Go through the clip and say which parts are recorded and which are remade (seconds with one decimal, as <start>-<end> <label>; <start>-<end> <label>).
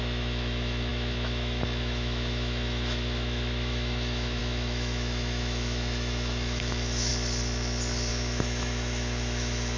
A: 0.0-7.1 remade; 7.1-8.1 recorded; 8.1-9.8 remade